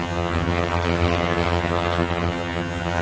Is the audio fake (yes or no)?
yes